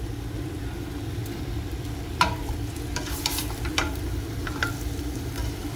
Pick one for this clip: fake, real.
fake